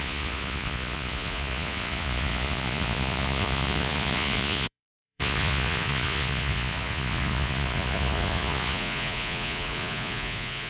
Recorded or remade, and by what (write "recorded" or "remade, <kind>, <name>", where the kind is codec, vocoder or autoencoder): remade, vocoder, Vocos